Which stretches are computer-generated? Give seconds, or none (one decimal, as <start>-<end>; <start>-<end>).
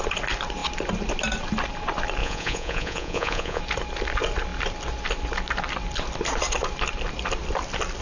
2.2-3.6